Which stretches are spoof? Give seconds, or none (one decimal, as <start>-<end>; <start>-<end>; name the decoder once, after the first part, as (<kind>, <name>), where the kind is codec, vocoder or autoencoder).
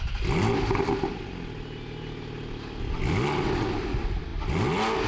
none